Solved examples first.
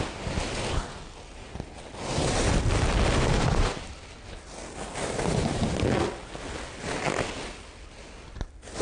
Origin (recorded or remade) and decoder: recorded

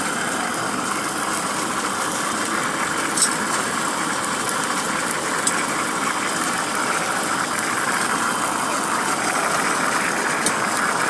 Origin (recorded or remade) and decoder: recorded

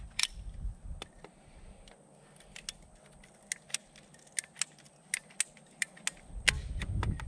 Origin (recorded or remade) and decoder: recorded